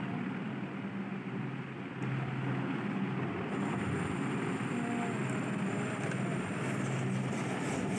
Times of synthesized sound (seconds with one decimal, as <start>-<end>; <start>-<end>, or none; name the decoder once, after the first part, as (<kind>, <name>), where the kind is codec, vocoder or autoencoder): none

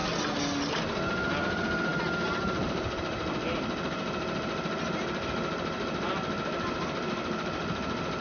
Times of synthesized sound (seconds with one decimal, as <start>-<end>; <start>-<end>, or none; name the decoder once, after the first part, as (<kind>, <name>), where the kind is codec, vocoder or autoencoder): none

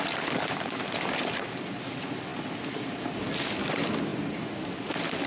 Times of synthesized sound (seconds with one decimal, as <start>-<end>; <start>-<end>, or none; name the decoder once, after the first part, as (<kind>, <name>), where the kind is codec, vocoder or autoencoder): none

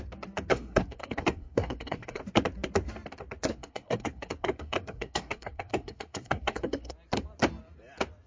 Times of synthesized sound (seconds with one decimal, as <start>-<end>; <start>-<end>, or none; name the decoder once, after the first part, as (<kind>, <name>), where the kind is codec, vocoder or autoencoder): 0.5-2.2 (codec, SNAC); 3.5-6.9

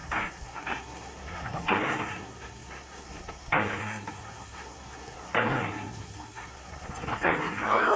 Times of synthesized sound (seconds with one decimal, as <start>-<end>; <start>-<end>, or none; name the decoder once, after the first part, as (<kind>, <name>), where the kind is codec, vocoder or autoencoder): 0.0-8.0 (codec, SNAC)

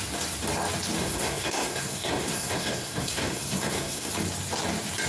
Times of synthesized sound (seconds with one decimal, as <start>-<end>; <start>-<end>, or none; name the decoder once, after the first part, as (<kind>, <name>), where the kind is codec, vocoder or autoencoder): 1.0-4.1 (codec, SNAC)

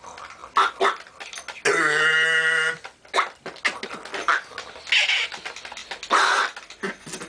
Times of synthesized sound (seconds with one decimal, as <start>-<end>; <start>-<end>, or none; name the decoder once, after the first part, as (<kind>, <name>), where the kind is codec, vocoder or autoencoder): none